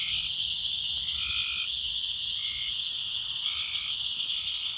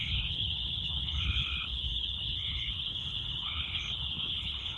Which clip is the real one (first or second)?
first